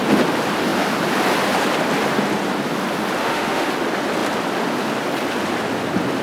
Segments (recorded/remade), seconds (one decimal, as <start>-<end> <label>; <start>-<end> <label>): 0.0-3.2 recorded; 3.2-3.7 remade; 3.7-6.2 recorded